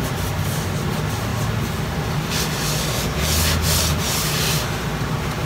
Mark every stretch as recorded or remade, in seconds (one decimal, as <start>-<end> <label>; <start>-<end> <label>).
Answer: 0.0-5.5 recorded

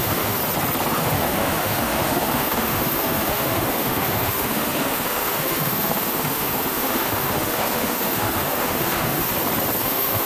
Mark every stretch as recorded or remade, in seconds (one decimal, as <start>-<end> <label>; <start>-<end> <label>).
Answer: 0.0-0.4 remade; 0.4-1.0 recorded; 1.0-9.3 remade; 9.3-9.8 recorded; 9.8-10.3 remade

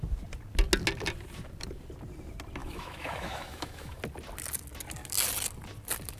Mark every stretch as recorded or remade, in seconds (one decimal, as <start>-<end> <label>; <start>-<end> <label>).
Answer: 0.0-2.6 recorded; 2.6-4.0 remade; 4.0-6.2 recorded